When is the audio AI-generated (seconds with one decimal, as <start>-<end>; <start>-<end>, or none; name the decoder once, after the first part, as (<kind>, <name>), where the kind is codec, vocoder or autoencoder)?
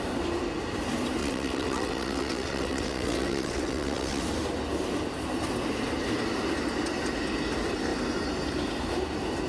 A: 1.2-4.2 (vocoder, WaveNeXt)